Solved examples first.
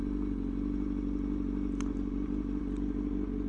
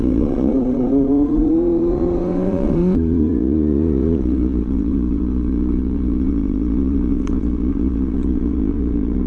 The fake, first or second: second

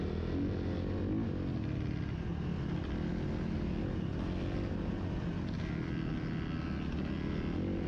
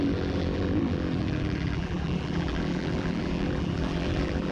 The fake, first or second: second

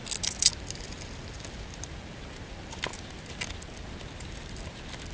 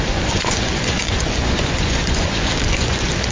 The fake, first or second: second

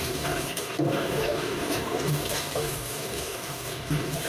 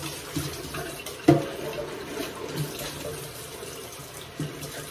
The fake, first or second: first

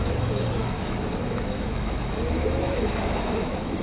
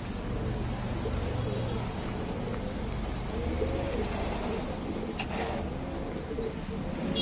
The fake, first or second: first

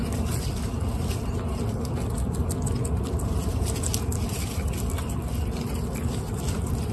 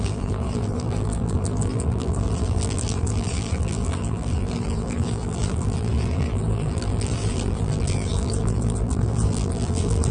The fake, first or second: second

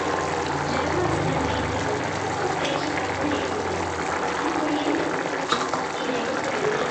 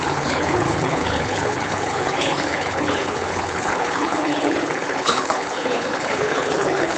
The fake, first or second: second